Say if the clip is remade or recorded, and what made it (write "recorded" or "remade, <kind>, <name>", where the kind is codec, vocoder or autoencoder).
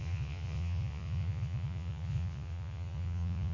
remade, vocoder, Vocos